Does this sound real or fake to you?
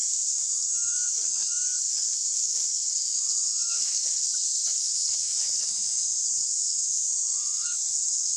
fake